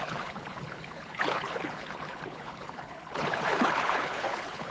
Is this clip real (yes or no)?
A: no